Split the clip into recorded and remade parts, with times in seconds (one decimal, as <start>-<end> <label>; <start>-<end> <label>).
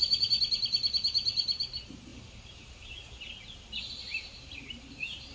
0.0-0.9 remade; 0.9-2.1 recorded; 2.1-3.1 remade; 3.1-4.3 recorded; 4.3-5.3 remade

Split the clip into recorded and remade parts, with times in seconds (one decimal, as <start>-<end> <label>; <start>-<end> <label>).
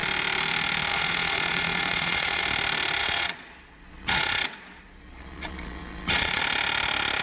0.0-0.9 recorded; 0.9-2.4 remade; 2.4-3.0 recorded; 3.0-6.4 remade; 6.4-7.2 recorded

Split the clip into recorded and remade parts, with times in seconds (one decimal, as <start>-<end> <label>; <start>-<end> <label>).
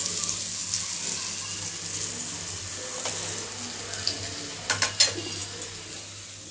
0.0-6.5 recorded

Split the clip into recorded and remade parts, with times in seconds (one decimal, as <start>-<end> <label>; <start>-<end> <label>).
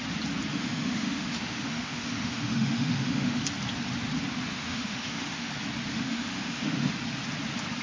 0.0-0.5 recorded; 0.5-3.4 remade; 3.4-4.5 recorded; 4.5-5.5 remade; 5.5-5.9 recorded; 5.9-6.9 remade; 6.9-7.8 recorded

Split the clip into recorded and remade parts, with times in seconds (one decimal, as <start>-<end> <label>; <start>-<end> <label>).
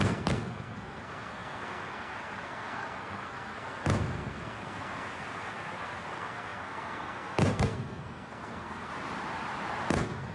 0.0-8.9 remade; 8.9-9.9 recorded; 9.9-10.3 remade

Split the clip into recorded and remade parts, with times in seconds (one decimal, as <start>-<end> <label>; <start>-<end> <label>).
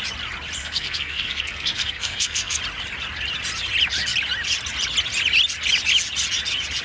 0.0-0.6 recorded; 0.6-2.6 remade; 2.6-6.8 recorded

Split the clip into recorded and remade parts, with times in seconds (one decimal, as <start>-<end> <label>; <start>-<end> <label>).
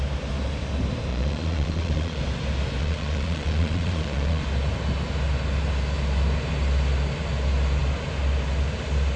0.0-1.1 recorded; 1.1-2.2 remade; 2.2-2.8 recorded; 2.8-4.4 remade; 4.4-9.2 recorded